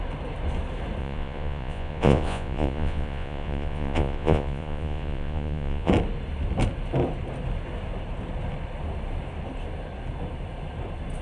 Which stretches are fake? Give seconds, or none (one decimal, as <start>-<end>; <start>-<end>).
1.0-5.9